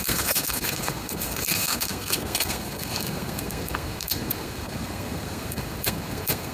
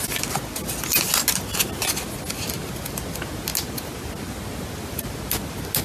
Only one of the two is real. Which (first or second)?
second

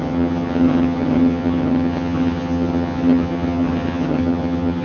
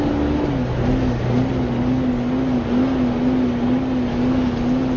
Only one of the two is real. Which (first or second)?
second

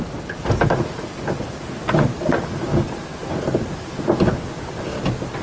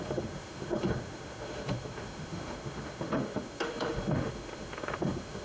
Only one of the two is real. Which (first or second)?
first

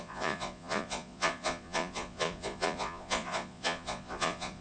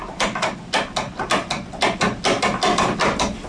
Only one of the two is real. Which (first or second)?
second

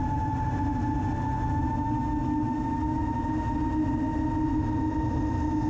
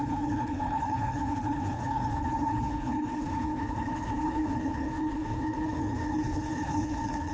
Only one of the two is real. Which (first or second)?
first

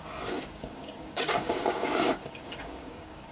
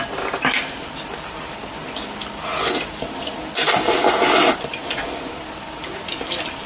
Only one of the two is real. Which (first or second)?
second